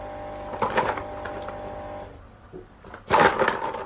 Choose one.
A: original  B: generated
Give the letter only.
A